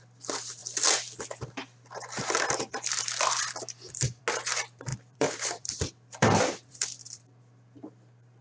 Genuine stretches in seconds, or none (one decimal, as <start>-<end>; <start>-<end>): 0.0-4.9; 7.4-8.4